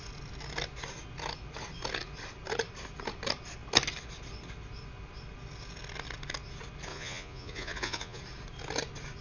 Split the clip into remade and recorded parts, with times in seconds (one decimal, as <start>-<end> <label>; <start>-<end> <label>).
0.0-6.9 recorded; 6.9-8.2 remade; 8.2-9.2 recorded